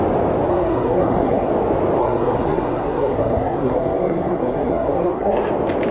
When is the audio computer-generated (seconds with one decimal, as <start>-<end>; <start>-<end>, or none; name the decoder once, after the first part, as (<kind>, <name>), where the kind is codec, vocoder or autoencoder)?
0.5-1.5 (codec, SNAC); 2.0-5.5